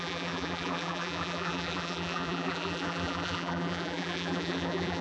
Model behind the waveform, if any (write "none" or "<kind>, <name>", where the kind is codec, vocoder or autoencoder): vocoder, BigVGAN v2